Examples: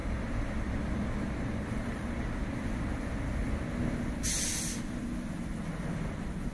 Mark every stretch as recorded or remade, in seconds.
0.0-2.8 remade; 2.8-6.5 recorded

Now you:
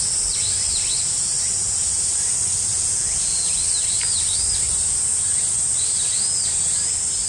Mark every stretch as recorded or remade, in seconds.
0.0-2.7 recorded; 2.7-3.5 remade; 3.5-7.3 recorded

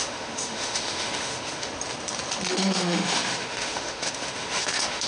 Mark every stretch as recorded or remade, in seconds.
0.0-1.7 remade; 1.7-2.5 recorded; 2.5-5.1 remade

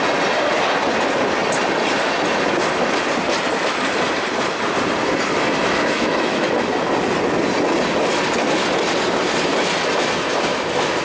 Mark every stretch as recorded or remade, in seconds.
0.0-5.6 recorded; 5.6-6.5 remade; 6.5-11.0 recorded

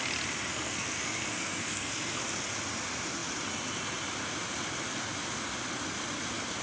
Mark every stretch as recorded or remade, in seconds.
0.0-0.5 recorded; 0.5-2.2 remade; 2.2-6.6 recorded

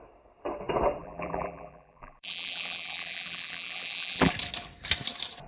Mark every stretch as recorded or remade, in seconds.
0.0-1.0 recorded; 1.0-4.3 remade; 4.3-5.5 recorded

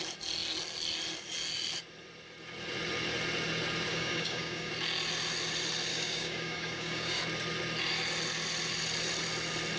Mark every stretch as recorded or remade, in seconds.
0.0-3.9 recorded; 3.9-4.7 remade; 4.7-5.9 recorded; 5.9-7.2 remade; 7.2-9.8 recorded